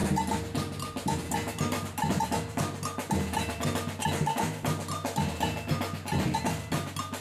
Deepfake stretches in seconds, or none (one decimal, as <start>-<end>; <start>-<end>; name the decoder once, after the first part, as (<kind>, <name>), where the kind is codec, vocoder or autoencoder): none